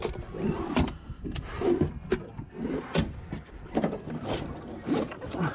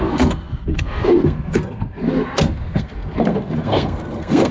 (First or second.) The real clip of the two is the first